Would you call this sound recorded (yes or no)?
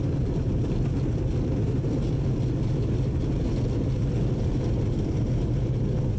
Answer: yes